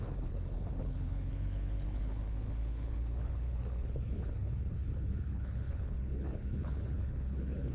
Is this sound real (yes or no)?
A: no